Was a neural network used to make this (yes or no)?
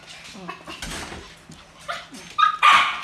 no